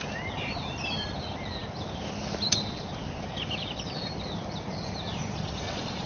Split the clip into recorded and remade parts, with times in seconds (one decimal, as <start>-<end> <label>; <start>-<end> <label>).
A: 0.0-6.1 recorded